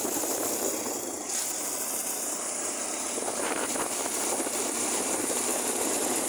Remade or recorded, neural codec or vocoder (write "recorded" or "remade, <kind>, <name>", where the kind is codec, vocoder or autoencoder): remade, vocoder, BigVGAN v2